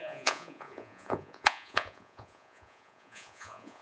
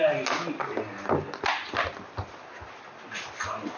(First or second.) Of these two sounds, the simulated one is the first